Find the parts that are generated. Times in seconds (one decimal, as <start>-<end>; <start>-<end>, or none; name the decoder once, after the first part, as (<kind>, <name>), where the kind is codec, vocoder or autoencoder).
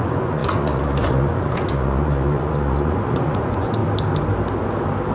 0.0-3.8 (vocoder, Vocos)